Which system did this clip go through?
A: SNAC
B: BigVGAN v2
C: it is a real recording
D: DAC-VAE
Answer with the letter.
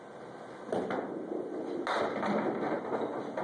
C